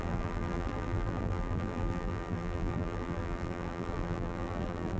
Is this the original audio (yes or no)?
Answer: no